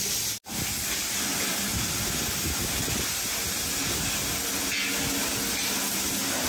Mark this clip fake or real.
real